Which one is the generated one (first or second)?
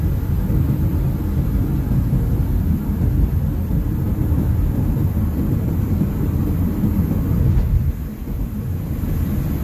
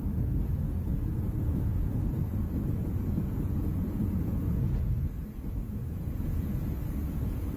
second